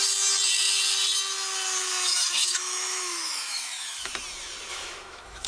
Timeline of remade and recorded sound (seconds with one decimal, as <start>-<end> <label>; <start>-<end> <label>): 0.0-2.1 recorded; 2.1-4.1 remade; 4.1-4.7 recorded; 4.7-5.5 remade